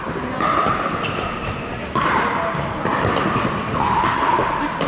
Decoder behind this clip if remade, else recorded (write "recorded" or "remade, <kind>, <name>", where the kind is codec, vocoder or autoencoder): recorded